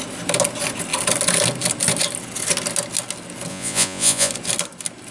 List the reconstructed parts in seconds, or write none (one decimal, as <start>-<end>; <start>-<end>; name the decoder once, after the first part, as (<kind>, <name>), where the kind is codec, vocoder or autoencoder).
3.5-4.3 (vocoder, Vocos)